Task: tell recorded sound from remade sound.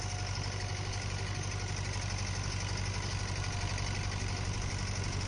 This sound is recorded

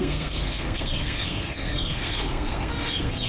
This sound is remade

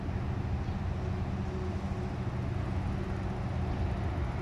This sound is recorded